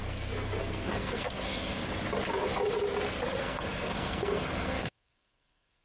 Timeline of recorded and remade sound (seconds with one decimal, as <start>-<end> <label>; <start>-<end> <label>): 0.0-1.8 remade; 1.8-3.4 recorded; 3.4-5.8 remade